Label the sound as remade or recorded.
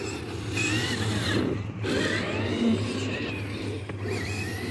remade